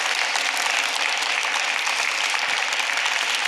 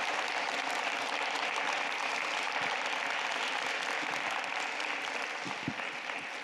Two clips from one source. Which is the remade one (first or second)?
first